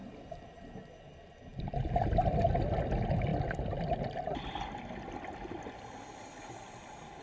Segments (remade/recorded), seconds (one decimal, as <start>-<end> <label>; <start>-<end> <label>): 0.0-7.2 recorded